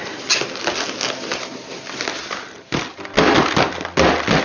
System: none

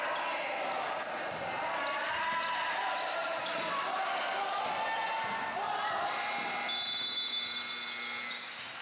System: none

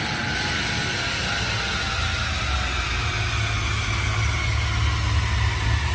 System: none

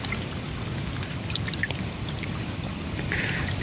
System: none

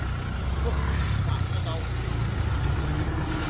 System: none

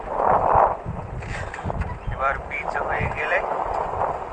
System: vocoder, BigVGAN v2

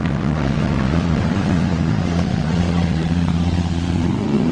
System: vocoder, Vocos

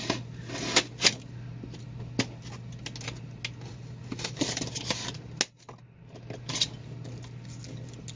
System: none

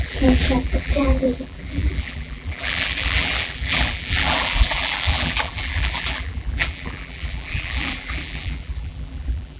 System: vocoder, BigVGAN v2